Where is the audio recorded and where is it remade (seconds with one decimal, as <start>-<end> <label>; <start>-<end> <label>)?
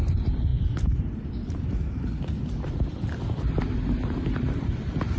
0.0-5.2 remade